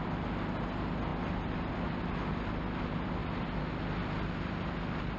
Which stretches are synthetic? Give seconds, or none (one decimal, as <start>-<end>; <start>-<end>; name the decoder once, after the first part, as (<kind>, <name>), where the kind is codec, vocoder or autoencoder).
none